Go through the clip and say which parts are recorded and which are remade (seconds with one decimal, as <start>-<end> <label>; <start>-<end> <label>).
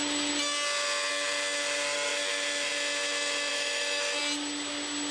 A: 0.0-3.5 recorded; 3.5-4.2 remade; 4.2-5.1 recorded